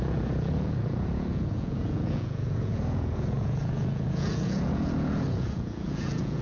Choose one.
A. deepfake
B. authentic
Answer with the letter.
A